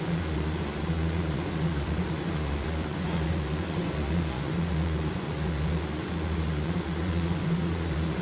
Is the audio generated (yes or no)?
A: yes